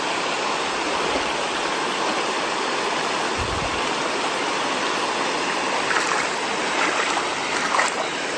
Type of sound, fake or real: real